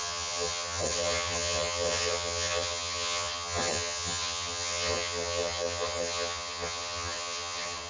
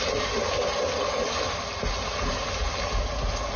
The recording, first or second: second